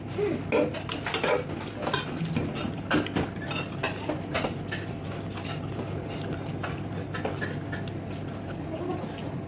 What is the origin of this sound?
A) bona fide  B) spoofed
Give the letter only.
A